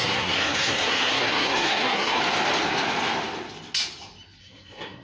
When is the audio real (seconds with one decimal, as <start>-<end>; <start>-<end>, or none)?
2.2-4.4